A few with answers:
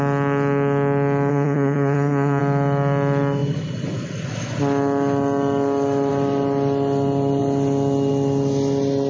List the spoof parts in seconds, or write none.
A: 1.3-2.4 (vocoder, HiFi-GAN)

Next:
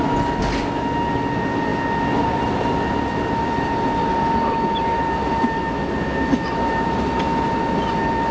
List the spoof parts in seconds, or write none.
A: none

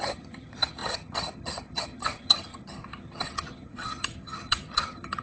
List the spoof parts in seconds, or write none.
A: 0.0-5.2 (vocoder, HiFi-GAN)